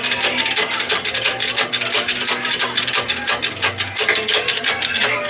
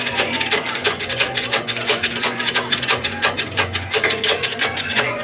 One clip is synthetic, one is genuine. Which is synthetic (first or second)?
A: second